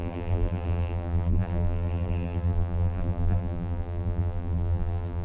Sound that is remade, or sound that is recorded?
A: remade